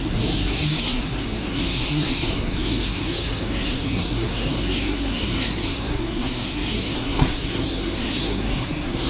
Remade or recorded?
remade